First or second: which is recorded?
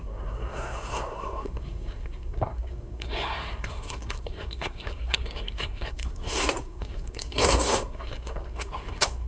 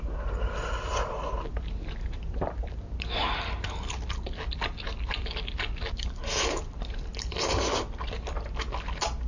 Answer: second